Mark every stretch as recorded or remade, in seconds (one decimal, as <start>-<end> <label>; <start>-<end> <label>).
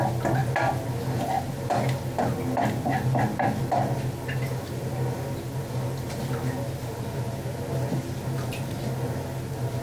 0.0-9.8 recorded